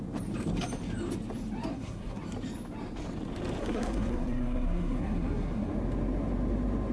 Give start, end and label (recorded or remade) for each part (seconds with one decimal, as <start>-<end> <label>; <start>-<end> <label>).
0.0-1.7 recorded; 1.7-2.2 remade; 2.2-3.6 recorded; 3.6-5.7 remade; 5.7-6.9 recorded